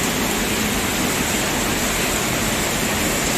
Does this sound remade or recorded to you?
recorded